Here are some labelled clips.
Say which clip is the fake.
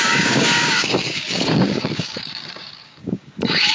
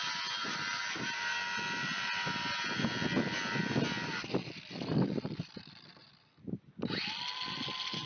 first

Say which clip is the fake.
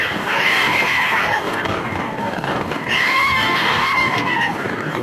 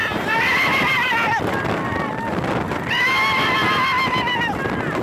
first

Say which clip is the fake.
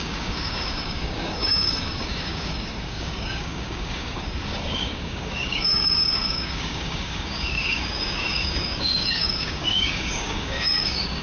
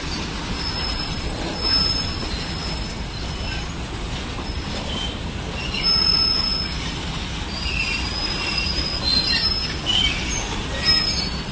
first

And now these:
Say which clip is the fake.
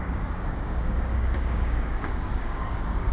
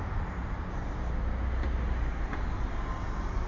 first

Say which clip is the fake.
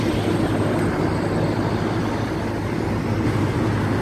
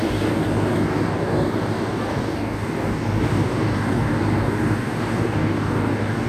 second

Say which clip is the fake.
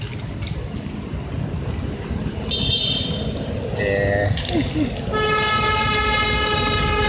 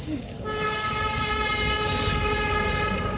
second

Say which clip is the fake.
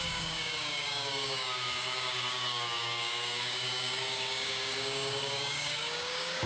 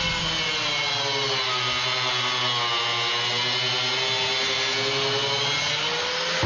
first